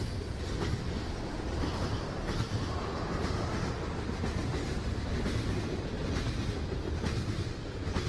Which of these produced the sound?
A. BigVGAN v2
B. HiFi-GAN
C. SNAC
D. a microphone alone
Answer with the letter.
D